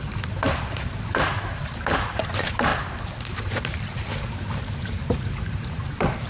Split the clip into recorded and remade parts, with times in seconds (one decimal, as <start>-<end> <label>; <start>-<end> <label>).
0.0-2.7 remade; 2.7-3.4 recorded; 3.4-6.3 remade

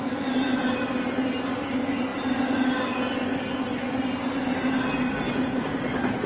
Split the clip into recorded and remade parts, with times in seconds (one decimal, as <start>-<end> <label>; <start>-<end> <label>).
0.0-6.3 recorded

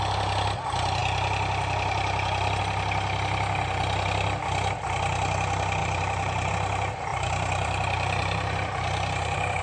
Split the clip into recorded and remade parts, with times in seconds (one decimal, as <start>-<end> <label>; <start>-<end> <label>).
0.0-5.8 recorded; 5.8-6.5 remade; 6.5-7.1 recorded; 7.1-9.6 remade

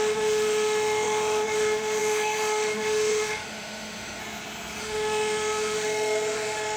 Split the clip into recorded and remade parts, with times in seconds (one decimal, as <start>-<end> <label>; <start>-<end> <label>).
0.0-4.2 remade; 4.2-4.8 recorded; 4.8-6.8 remade

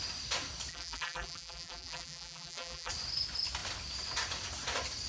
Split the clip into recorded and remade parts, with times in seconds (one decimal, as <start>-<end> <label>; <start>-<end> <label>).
0.0-0.7 recorded; 0.7-2.9 remade; 2.9-5.1 recorded

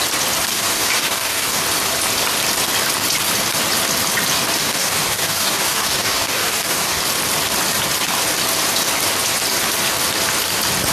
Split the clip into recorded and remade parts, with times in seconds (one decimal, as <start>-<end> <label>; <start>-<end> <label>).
0.0-0.5 recorded; 0.5-1.6 remade; 1.6-4.6 recorded; 4.6-7.0 remade; 7.0-10.9 recorded

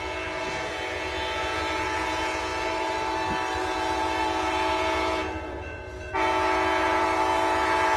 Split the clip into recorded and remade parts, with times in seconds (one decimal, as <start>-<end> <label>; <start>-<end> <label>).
0.0-2.5 remade; 2.5-3.6 recorded; 3.6-8.0 remade